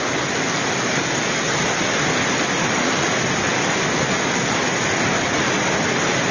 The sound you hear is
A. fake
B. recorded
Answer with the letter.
B